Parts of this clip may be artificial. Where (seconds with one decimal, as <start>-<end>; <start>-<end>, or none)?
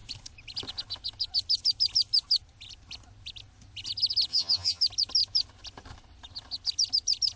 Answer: 4.3-4.8